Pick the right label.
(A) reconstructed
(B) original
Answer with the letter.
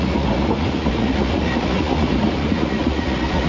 A